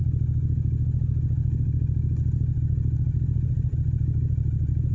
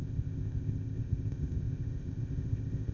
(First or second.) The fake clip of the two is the second